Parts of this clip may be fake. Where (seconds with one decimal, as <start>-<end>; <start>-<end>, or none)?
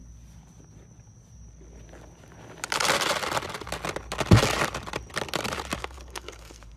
5.8-6.8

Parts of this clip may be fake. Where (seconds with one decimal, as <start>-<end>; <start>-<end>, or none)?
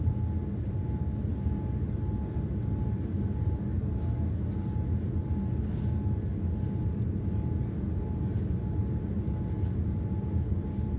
none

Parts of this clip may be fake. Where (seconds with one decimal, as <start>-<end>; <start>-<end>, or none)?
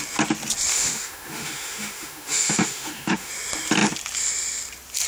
0.7-3.3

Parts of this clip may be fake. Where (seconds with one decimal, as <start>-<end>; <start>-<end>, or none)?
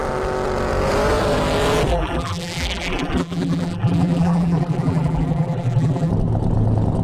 1.9-6.1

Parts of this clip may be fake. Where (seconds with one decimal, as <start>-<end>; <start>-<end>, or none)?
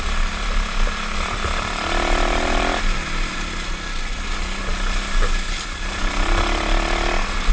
none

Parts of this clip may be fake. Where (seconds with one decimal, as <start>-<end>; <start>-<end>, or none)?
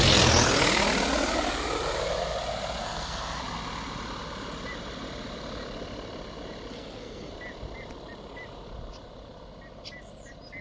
2.8-3.4; 6.7-7.3